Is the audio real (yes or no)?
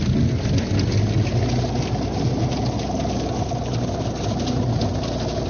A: yes